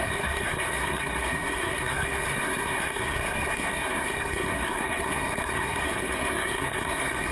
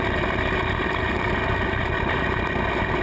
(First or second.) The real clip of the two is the second